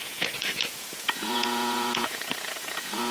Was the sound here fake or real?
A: fake